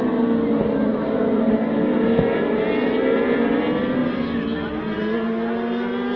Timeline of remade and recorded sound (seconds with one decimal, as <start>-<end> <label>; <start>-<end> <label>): 0.0-0.9 recorded; 0.9-1.5 remade; 1.5-4.0 recorded; 4.0-4.8 remade; 4.8-6.2 recorded